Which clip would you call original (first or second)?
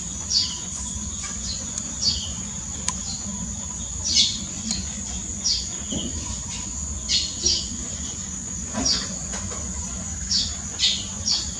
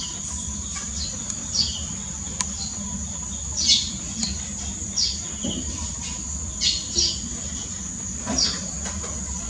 second